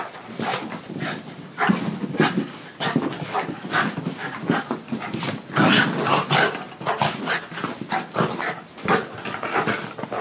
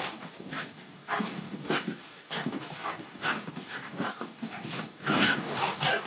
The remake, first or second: second